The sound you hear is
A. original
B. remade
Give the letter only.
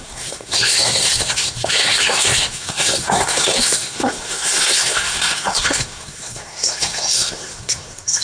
B